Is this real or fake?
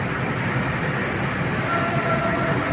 real